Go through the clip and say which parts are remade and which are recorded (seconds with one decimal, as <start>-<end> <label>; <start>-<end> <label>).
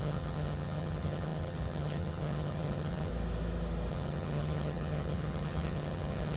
0.0-3.1 remade; 3.1-3.9 recorded; 3.9-6.4 remade